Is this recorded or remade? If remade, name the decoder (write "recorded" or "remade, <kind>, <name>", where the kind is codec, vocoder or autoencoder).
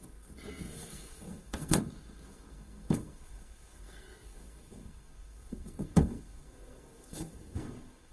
remade, codec, SNAC